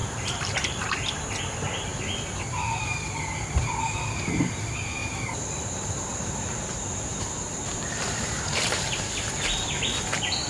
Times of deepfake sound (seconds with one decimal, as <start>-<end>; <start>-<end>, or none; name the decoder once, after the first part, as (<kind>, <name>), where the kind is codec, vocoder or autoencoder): 0.0-0.8 (vocoder, BigVGAN v2); 5.0-9.0